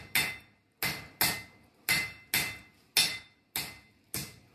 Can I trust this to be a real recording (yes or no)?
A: yes